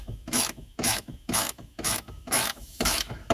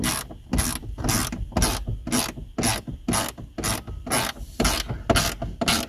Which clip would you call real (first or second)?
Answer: second